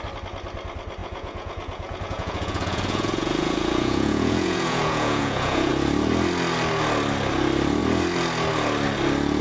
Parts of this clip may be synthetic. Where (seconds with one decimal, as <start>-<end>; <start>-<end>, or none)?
1.0-5.7